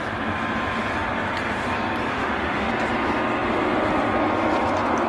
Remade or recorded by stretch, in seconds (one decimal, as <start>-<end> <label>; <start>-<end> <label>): 0.0-2.1 recorded; 2.1-2.7 remade; 2.7-5.1 recorded